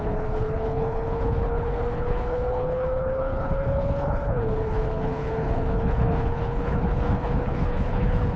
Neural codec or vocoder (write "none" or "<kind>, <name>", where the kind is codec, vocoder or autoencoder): codec, HILCodec